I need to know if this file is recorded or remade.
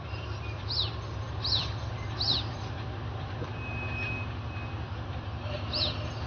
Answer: remade